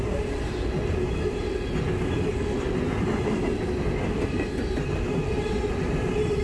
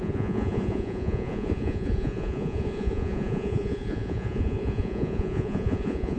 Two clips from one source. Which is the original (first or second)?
first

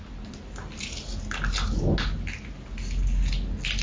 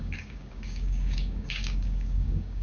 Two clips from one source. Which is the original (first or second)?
first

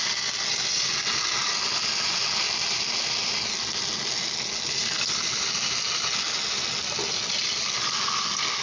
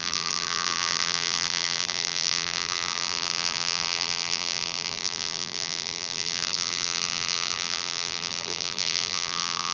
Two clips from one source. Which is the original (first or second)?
first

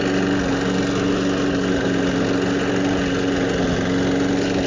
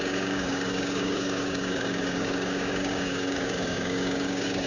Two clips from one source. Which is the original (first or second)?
first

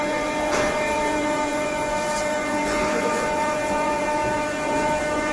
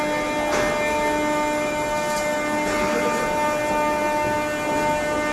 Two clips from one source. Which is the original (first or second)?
second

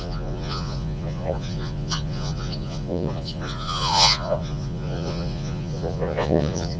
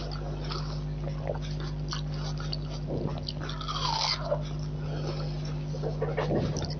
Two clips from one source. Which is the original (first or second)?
second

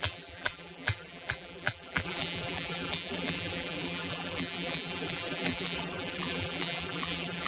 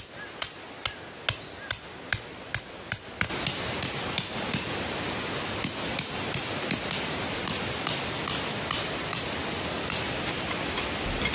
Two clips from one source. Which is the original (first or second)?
second